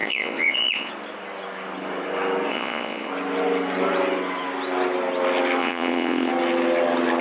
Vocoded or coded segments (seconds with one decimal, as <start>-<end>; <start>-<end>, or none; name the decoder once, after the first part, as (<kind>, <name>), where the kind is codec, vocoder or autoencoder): 0.0-0.9 (vocoder, Vocos); 2.5-3.1; 5.6-6.3